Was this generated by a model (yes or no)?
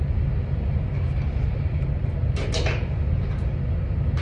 no